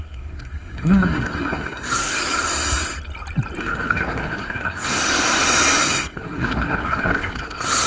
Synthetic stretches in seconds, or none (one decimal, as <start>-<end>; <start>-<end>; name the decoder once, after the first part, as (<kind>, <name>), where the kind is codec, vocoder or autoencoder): 0.0-2.1 (codec, SNAC); 3.6-5.0; 5.8-7.9